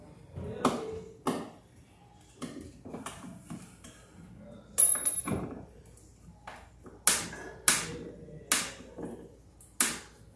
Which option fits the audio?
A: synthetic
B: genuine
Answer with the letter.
B